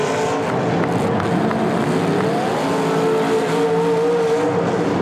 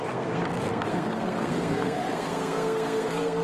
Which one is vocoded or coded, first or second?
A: second